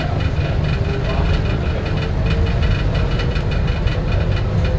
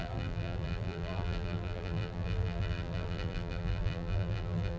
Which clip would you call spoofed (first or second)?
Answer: second